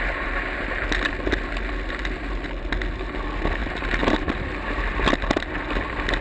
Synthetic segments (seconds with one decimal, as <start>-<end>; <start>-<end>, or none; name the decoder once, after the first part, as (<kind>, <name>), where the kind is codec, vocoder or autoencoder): none